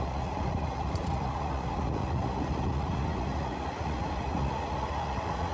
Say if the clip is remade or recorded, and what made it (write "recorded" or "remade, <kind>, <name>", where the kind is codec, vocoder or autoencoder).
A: remade, vocoder, Vocos